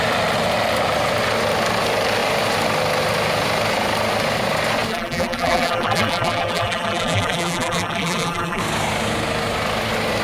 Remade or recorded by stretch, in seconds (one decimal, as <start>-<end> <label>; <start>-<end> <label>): 0.0-4.9 recorded; 4.9-8.6 remade; 8.6-10.2 recorded